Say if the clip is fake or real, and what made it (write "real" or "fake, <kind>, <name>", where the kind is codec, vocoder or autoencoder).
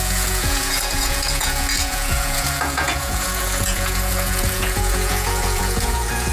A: fake, vocoder, Vocos